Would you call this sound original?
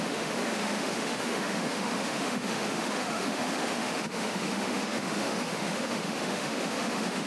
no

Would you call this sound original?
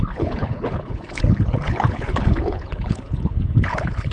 no